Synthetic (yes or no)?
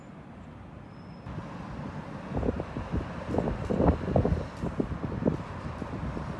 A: no